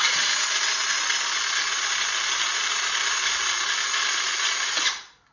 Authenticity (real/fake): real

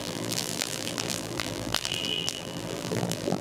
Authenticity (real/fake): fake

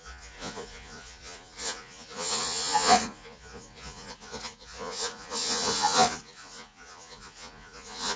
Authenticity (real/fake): fake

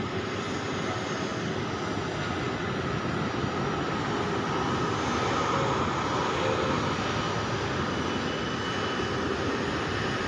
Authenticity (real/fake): real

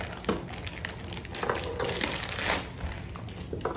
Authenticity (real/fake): real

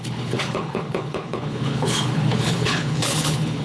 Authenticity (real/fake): fake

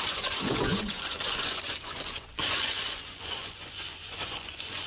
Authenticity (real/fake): fake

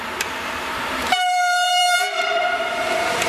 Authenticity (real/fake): fake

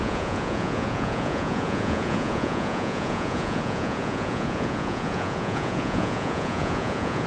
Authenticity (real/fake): fake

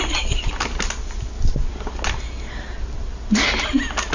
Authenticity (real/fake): real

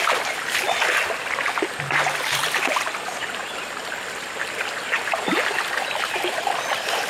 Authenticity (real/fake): fake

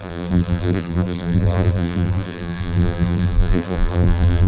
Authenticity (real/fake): fake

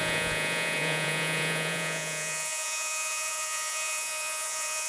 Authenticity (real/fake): fake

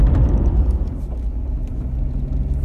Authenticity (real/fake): real